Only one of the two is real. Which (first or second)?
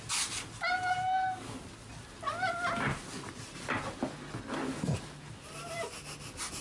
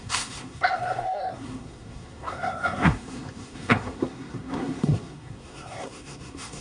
first